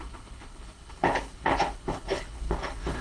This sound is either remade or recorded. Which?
remade